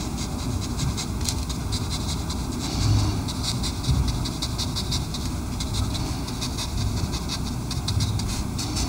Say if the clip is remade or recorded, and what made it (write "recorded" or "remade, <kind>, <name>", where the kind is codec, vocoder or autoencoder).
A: recorded